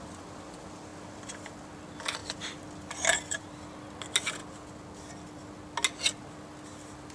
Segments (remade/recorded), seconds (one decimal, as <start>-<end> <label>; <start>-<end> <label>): 0.0-7.1 recorded